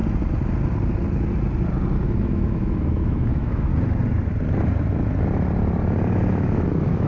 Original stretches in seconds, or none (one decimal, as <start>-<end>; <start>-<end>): 0.0-2.2; 3.7-6.3